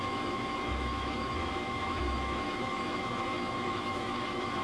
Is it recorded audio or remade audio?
remade